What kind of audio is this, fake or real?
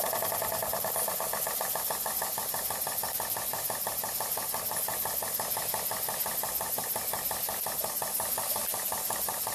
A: real